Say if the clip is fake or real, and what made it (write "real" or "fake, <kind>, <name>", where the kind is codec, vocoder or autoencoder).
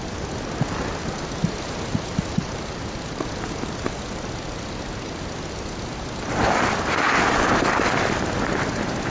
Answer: real